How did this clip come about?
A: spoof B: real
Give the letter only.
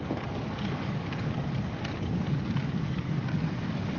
A